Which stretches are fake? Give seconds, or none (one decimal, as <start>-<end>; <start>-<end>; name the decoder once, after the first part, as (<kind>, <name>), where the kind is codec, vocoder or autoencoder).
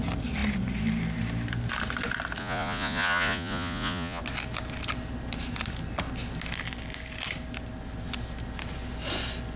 2.4-4.2 (vocoder, Vocos)